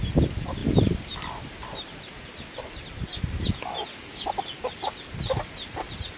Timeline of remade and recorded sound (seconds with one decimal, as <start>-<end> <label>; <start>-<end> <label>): 0.0-6.2 recorded